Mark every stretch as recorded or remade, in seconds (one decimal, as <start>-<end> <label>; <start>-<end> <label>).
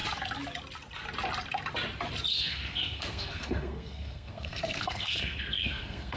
0.0-2.3 recorded; 2.3-6.2 remade